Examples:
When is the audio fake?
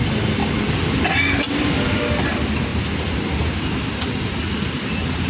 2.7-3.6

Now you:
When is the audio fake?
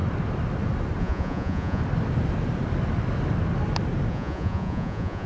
1.0-1.8; 4.1-5.3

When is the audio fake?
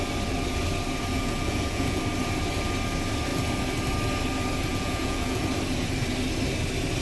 1.1-2.0; 4.7-5.4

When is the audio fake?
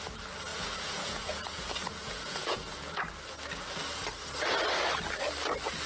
0.5-3.0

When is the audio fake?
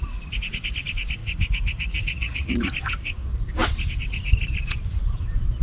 1.2-2.7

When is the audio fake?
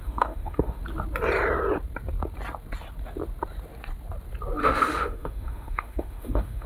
0.0-0.8; 4.6-6.7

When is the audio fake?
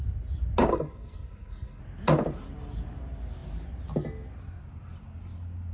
0.7-1.8